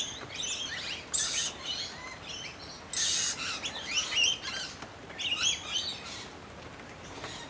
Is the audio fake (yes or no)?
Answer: no